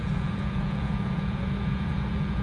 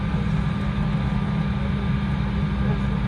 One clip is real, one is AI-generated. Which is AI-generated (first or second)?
first